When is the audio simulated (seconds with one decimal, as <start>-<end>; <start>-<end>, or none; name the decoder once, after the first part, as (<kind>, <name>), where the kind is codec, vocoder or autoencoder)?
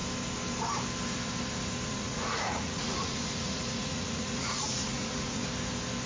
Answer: 1.9-5.4 (vocoder, Vocos)